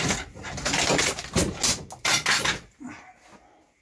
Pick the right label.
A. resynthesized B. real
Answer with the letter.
B